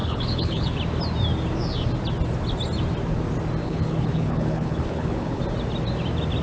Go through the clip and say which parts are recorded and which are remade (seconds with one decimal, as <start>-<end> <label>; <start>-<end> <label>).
0.0-0.8 remade; 0.8-3.6 recorded; 3.6-5.4 remade; 5.4-6.4 recorded

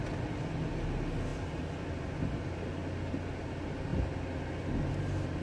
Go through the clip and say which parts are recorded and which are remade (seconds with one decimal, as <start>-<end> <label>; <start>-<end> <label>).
0.0-5.4 recorded

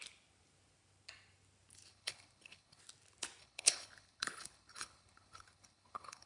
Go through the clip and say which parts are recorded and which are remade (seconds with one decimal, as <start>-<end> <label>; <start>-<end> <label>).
0.0-1.9 recorded; 1.9-2.8 remade; 2.8-3.4 recorded; 3.4-6.3 remade

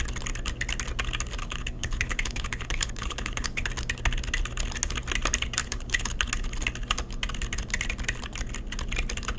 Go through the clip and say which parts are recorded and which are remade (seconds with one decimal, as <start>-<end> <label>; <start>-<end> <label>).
0.0-1.4 recorded; 1.4-3.7 remade; 3.7-5.6 recorded; 5.6-6.3 remade; 6.3-9.4 recorded

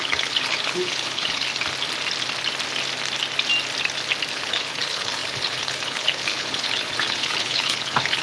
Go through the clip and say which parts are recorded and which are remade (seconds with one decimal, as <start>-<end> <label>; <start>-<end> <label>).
0.0-1.5 remade; 1.5-4.3 recorded; 4.3-8.2 remade

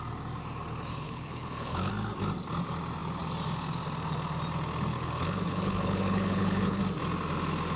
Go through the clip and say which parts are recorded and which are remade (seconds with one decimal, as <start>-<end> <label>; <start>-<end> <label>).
0.0-0.9 recorded; 0.9-1.9 remade; 1.9-4.9 recorded; 4.9-6.8 remade; 6.8-7.8 recorded

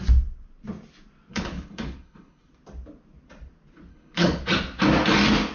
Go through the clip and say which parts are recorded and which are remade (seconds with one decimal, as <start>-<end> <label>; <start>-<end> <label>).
0.0-1.3 recorded; 1.3-2.5 remade; 2.5-3.9 recorded; 3.9-4.4 remade; 4.4-5.5 recorded